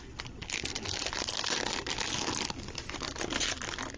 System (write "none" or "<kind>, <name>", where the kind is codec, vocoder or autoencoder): none